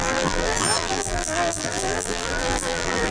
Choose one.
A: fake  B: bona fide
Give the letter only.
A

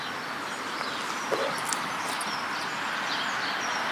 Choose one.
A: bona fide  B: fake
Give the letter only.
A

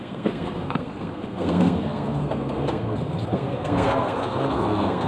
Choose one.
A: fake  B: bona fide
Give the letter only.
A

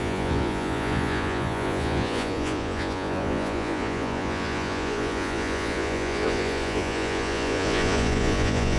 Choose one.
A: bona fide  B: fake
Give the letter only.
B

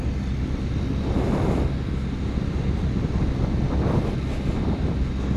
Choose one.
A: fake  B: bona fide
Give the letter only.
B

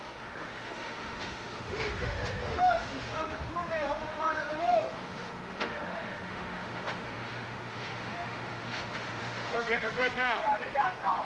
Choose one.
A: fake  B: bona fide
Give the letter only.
A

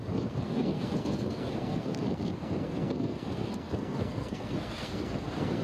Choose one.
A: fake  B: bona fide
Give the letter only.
A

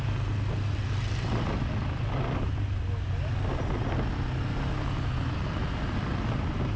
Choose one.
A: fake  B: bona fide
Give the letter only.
B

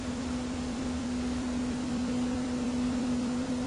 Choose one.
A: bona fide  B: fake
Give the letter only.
B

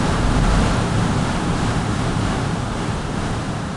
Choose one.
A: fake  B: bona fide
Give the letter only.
A